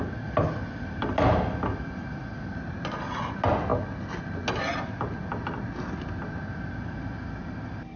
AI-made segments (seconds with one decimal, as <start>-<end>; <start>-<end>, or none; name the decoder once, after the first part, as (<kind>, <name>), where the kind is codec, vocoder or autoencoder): none